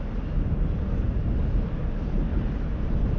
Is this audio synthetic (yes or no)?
no